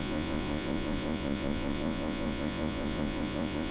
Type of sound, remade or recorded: remade